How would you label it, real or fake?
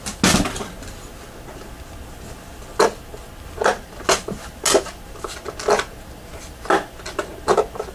real